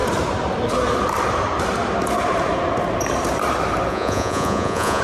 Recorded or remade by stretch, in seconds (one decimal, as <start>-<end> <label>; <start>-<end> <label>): 0.0-3.9 recorded; 3.9-5.0 remade